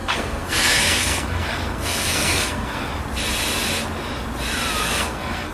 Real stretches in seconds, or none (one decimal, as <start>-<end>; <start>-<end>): 2.9-4.8